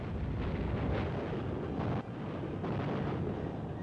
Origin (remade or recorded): recorded